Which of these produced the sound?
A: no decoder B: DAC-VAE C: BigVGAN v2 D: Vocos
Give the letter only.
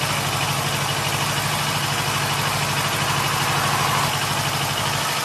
A